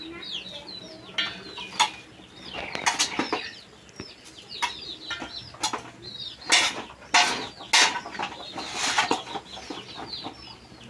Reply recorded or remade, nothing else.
recorded